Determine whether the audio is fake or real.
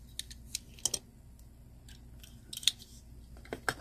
real